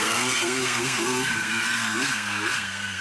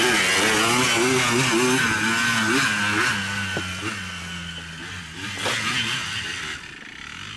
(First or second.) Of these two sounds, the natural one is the second